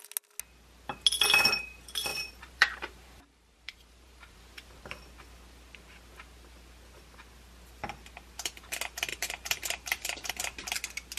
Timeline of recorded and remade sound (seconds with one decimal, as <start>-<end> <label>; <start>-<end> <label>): 0.0-2.1 recorded; 2.1-4.4 remade; 4.4-9.1 recorded; 9.1-10.3 remade; 10.3-11.2 recorded